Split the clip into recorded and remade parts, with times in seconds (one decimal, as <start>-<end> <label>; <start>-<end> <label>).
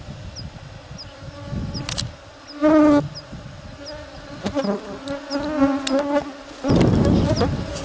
0.0-7.8 recorded